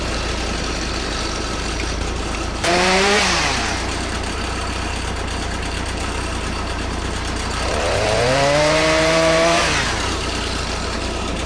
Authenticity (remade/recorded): remade